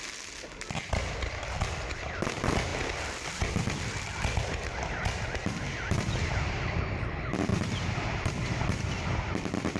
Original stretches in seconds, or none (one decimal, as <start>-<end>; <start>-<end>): 0.0-9.8